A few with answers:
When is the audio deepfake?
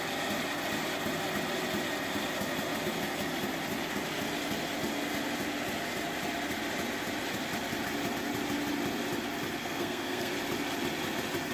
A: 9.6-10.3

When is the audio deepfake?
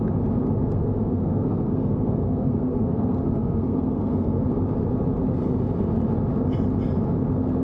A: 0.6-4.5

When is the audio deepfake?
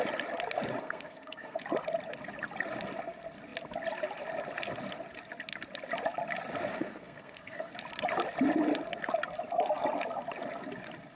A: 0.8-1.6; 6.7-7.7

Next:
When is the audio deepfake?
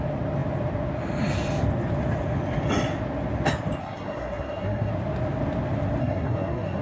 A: 3.8-4.9; 6.0-6.8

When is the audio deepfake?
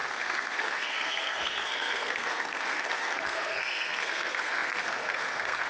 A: 0.0-5.7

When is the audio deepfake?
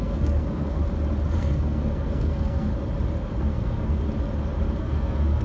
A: 0.0-0.8; 1.3-2.7; 3.4-4.0; 4.8-5.4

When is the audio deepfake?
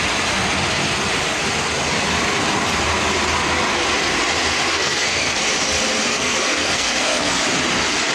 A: 4.7-5.4; 6.1-7.4